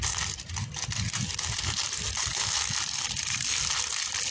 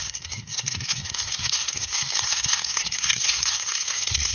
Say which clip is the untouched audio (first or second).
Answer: first